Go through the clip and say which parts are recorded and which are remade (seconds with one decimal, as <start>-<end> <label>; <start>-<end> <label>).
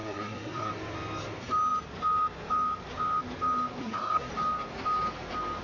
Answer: 0.0-0.7 remade; 0.7-3.8 recorded; 3.8-4.3 remade; 4.3-5.6 recorded